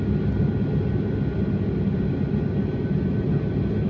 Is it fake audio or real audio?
real